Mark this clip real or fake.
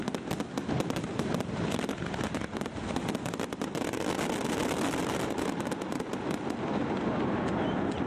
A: real